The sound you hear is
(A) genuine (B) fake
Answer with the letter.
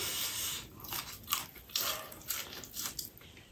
A